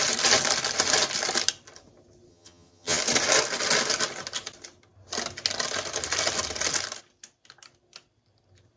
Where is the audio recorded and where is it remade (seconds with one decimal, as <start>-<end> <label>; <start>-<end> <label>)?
0.0-2.3 recorded; 2.3-3.0 remade; 3.0-8.8 recorded